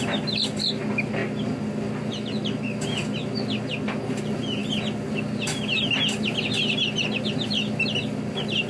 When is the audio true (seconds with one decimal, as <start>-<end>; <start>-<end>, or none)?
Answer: 0.0-8.7